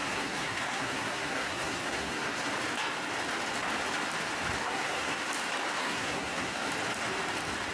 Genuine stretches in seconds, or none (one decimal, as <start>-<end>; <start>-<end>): 2.5-4.6; 5.2-5.8; 6.7-7.7